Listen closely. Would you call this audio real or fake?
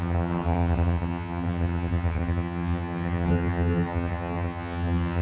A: fake